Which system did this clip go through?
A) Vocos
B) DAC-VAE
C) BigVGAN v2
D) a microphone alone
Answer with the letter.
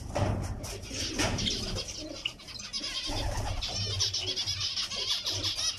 D